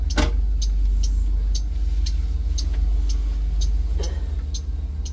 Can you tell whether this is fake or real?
real